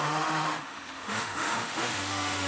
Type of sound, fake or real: fake